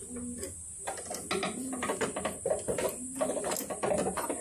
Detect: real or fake real